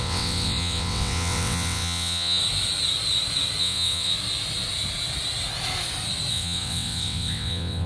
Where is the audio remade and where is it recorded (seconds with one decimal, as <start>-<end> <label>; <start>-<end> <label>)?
0.0-2.4 remade; 2.4-3.6 recorded; 3.6-4.1 remade; 4.1-6.3 recorded; 6.3-7.9 remade